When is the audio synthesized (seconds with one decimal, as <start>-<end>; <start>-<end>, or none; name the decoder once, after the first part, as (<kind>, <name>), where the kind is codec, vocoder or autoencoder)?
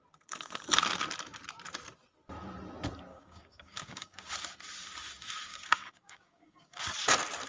3.1-4.3 (codec, DAC); 5.5-6.8